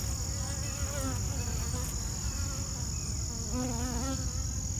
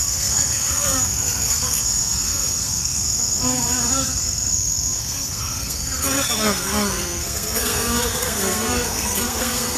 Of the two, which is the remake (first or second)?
second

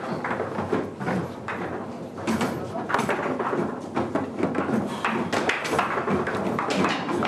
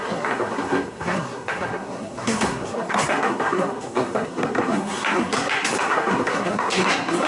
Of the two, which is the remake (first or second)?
second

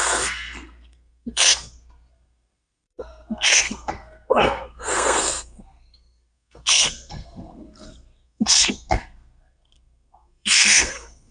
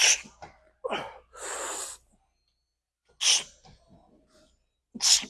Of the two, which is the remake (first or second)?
first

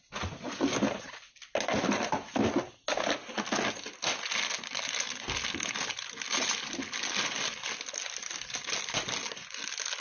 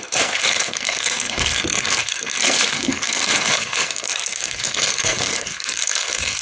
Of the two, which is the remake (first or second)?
second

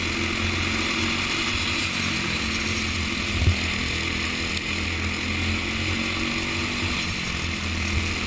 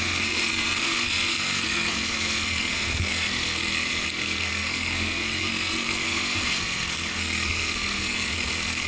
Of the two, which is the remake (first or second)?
second